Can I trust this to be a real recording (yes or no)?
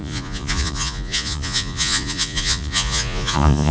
no